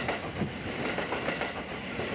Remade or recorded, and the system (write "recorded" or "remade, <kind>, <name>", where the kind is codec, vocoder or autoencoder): recorded